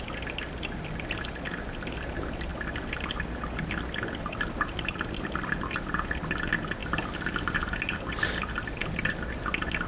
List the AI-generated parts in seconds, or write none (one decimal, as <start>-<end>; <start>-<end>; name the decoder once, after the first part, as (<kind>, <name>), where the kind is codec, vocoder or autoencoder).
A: none